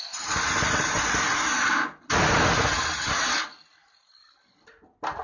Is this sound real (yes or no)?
yes